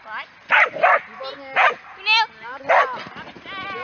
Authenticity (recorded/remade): recorded